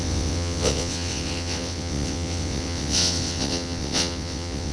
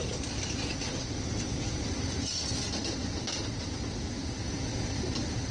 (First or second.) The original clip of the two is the second